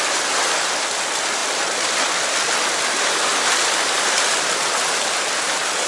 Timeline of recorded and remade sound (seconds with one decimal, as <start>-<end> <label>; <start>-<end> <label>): 0.0-1.4 recorded; 1.4-4.9 remade; 4.9-5.9 recorded